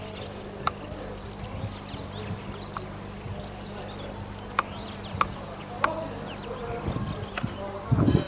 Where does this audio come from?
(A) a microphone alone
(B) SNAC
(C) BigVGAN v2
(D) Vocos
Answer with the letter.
A